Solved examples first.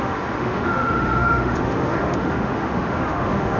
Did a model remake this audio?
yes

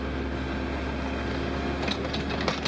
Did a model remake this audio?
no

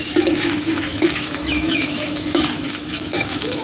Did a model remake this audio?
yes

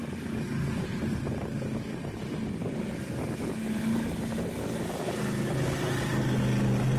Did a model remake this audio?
no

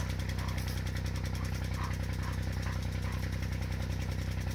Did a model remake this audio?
no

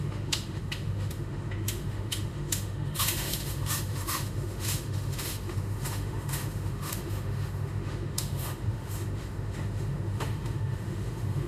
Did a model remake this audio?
yes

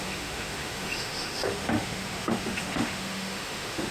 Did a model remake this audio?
yes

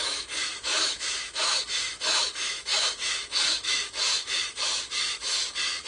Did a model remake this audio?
yes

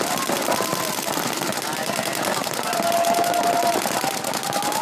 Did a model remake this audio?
no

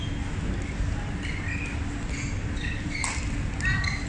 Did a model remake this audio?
no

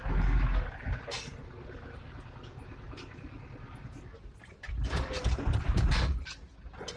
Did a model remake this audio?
no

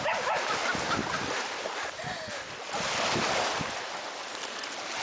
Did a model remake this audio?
no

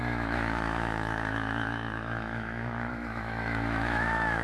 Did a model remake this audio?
yes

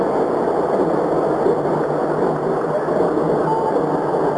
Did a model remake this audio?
no